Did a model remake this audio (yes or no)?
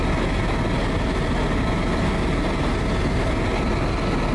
no